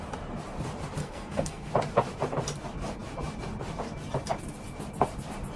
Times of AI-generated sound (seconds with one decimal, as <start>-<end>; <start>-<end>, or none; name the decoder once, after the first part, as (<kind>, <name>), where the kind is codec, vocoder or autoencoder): 1.0-1.7 (codec, SNAC)